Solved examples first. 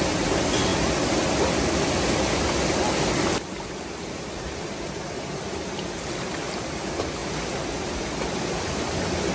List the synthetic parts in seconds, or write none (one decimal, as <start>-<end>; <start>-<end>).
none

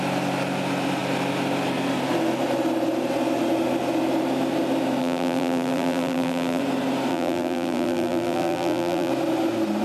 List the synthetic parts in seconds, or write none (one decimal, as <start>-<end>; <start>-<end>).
5.0-6.6; 7.1-9.1

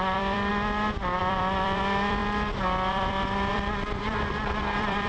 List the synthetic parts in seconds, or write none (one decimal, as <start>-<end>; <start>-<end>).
0.0-0.5; 1.2-2.2; 2.9-5.1

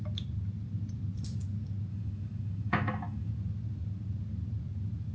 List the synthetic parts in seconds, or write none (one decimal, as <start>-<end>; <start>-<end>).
1.9-3.3